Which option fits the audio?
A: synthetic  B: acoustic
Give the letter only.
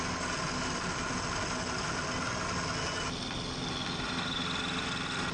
B